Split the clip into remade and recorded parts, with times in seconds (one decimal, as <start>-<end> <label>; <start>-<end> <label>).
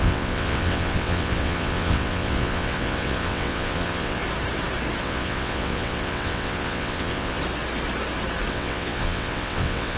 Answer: 0.0-4.2 remade; 4.2-5.0 recorded; 5.0-7.4 remade; 7.4-8.5 recorded; 8.5-10.0 remade